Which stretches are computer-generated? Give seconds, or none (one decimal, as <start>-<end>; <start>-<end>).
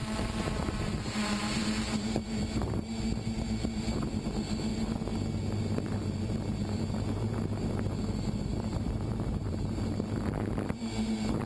0.0-4.7; 5.4-11.5